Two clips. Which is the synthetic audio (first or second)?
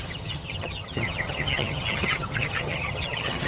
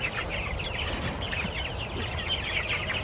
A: first